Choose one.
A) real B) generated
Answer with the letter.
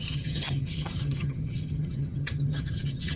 B